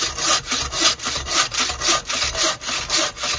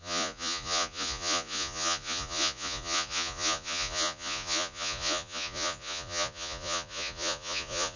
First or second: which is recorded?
first